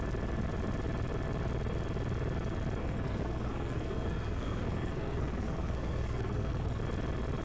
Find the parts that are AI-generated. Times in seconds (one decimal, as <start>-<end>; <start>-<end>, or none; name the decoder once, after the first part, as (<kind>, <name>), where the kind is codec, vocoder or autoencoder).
2.8-6.8 (codec, SNAC)